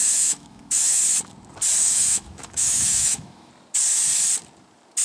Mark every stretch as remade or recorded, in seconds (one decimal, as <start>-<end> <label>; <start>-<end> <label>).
0.0-1.0 remade; 1.0-1.8 recorded; 1.8-3.5 remade; 3.5-5.0 recorded